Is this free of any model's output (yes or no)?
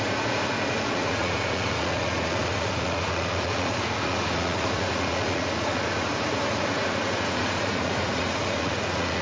no